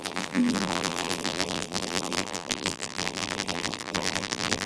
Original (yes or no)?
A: no